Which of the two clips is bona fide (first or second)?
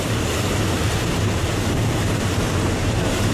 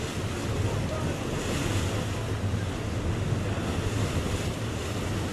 second